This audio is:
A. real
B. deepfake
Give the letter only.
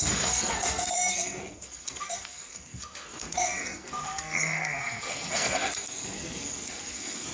B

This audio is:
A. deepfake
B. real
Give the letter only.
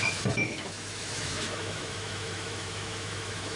A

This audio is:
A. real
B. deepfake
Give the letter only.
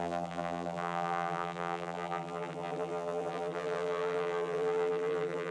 B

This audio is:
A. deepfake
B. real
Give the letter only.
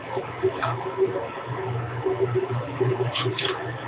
A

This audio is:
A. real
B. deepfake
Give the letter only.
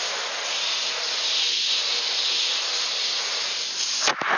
A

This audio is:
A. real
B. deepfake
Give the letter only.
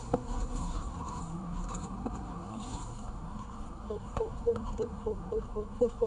B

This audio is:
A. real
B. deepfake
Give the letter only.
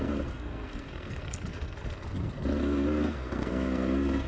B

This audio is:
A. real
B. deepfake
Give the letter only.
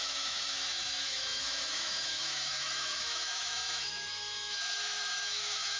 B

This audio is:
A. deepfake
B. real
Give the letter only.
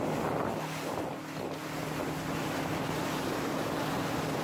B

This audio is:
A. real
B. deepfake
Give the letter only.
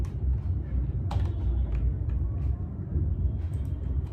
B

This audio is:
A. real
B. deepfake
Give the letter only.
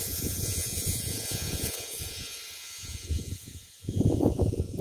B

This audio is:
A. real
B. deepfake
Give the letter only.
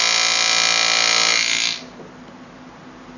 A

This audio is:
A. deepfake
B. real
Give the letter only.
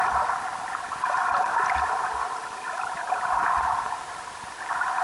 B